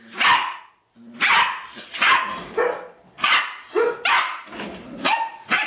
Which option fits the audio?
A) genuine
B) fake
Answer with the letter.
A